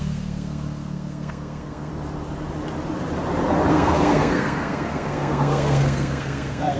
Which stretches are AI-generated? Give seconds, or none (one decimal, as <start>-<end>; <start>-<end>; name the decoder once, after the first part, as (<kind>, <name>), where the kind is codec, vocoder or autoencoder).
0.0-1.9 (codec, SNAC); 3.7-6.8